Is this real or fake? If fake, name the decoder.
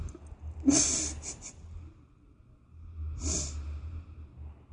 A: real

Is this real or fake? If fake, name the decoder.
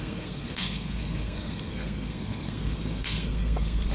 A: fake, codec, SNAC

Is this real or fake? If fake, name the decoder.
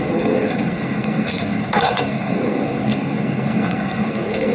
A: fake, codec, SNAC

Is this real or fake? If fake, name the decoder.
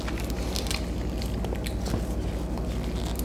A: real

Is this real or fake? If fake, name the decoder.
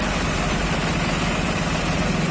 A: real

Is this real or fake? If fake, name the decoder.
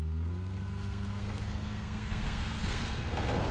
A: fake, codec, SNAC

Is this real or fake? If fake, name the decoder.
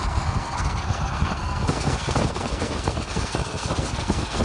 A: fake, codec, SNAC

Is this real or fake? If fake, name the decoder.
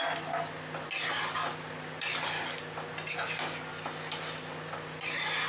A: real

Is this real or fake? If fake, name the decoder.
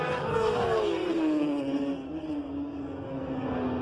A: fake, codec, SNAC